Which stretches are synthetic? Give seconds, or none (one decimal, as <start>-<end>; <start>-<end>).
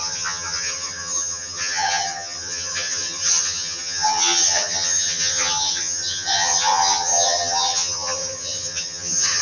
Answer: 0.0-9.4